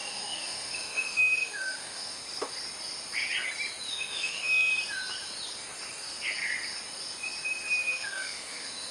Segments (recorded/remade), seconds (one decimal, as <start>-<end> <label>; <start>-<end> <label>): 0.0-2.2 remade; 2.2-3.9 recorded; 3.9-4.7 remade; 4.7-7.8 recorded; 7.8-8.9 remade

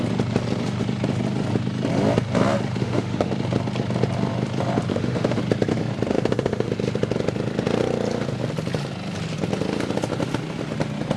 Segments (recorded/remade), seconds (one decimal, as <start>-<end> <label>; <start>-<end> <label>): 0.0-2.8 recorded; 2.8-3.3 remade; 3.3-4.9 recorded; 4.9-5.4 remade; 5.4-6.1 recorded; 6.1-6.7 remade; 6.7-11.2 recorded

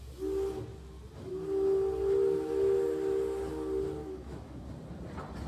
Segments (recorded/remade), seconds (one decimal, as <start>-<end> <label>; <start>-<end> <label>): 0.0-4.0 recorded; 4.0-4.7 remade; 4.7-5.5 recorded

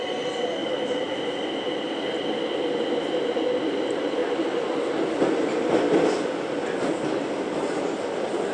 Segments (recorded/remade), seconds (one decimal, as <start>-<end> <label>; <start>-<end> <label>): 0.0-8.5 recorded

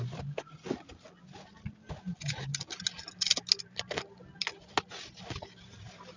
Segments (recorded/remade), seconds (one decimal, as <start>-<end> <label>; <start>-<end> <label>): 0.0-6.2 recorded